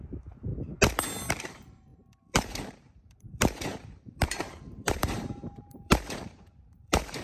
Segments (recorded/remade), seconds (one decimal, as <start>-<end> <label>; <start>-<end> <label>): 0.0-0.5 remade; 0.5-1.4 recorded; 1.4-7.2 remade